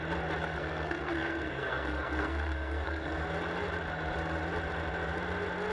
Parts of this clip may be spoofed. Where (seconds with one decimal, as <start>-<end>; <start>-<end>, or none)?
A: 0.4-3.2